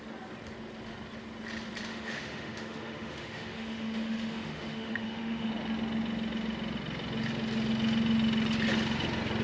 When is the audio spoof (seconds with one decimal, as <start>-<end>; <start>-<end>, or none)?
1.9-5.5